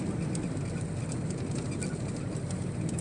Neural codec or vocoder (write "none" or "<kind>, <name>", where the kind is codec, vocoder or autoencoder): none